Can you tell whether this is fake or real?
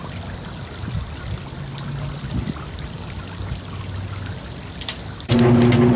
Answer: real